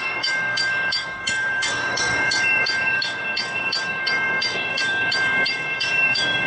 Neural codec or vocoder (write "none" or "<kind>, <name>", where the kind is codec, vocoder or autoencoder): codec, DAC